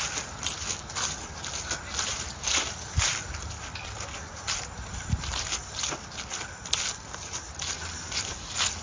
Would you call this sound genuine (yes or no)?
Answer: yes